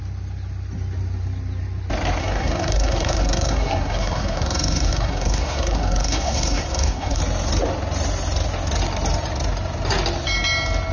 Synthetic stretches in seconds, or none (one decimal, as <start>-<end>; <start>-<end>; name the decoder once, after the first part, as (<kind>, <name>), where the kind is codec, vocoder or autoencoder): 2.2-7.2 (codec, SNAC)